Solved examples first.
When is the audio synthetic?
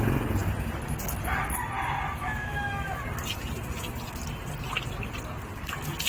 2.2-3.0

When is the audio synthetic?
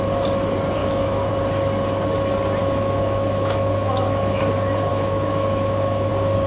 0.8-1.3; 2.6-4.4; 4.9-6.1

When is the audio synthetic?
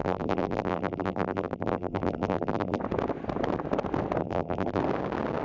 0.0-2.8; 4.2-4.8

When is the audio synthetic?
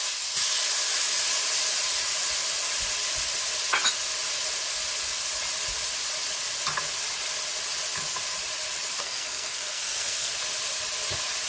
9.0-10.3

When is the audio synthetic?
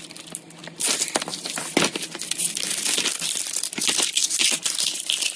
none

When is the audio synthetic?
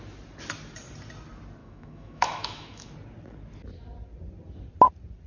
1.6-2.9